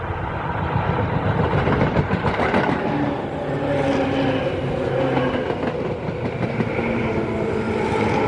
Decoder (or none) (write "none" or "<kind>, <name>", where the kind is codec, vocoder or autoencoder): none